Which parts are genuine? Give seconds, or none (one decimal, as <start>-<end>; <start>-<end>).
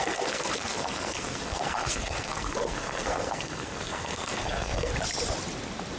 4.9-6.0